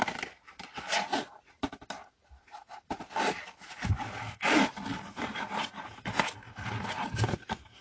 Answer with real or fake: real